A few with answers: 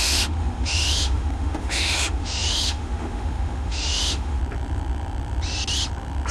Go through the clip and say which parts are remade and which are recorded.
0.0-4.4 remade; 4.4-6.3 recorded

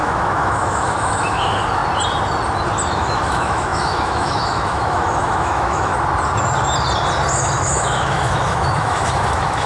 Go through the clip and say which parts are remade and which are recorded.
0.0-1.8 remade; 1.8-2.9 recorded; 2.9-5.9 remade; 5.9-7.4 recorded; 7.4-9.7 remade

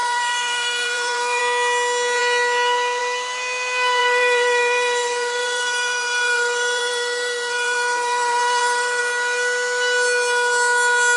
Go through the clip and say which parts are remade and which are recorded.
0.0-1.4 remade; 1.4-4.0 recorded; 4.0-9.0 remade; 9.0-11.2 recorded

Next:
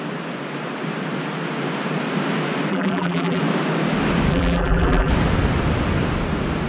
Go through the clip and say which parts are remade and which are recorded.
0.0-2.7 recorded; 2.7-3.4 remade; 3.4-4.3 recorded; 4.3-5.1 remade; 5.1-6.7 recorded

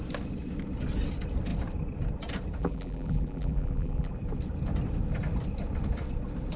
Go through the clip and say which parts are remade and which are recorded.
0.0-2.6 recorded; 2.6-4.1 remade; 4.1-6.6 recorded